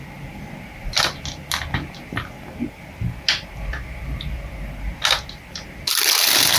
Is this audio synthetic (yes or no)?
no